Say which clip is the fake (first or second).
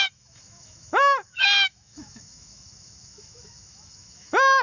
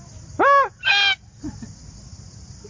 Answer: first